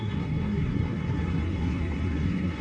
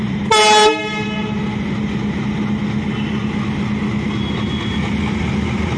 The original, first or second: second